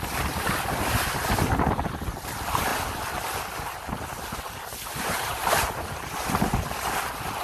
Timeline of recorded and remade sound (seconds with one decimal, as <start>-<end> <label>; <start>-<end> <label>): 0.0-7.4 recorded